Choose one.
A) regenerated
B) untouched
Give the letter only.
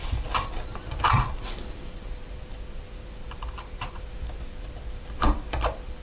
A